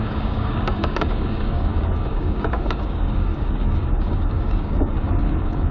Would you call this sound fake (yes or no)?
yes